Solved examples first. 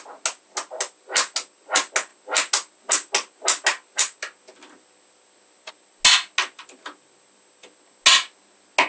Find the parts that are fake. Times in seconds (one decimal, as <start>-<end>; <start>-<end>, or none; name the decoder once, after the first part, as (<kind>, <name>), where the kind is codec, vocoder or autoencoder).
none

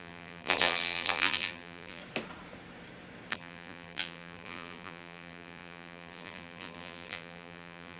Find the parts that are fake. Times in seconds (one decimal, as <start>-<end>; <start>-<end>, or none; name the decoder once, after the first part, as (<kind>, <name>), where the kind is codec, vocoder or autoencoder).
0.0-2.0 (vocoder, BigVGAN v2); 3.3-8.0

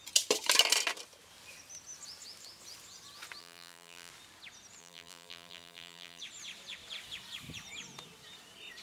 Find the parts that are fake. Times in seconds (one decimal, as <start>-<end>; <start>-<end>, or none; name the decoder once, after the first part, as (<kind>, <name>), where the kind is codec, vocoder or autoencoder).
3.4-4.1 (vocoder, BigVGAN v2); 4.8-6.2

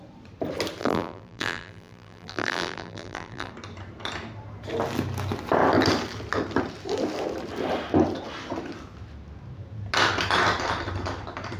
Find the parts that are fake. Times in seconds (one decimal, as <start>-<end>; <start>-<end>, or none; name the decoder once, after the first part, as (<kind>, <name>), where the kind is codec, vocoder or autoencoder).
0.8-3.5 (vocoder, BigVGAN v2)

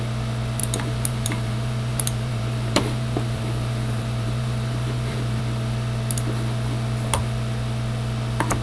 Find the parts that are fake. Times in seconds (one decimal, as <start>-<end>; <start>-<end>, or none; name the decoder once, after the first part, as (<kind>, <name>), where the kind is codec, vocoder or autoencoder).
0.6-5.4 (vocoder, BigVGAN v2)

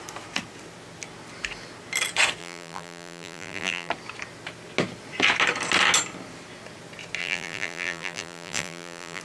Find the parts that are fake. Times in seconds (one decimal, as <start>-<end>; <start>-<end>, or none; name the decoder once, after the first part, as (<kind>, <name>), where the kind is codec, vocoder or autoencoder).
2.4-3.9 (vocoder, BigVGAN v2); 7.2-9.2